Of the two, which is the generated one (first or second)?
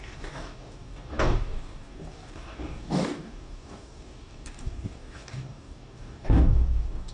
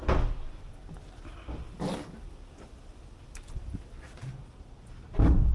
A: first